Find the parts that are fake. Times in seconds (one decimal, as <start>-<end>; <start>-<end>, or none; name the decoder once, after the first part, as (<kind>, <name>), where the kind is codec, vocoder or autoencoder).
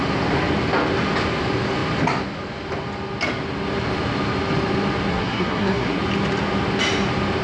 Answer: 5.1-6.0 (codec, SNAC)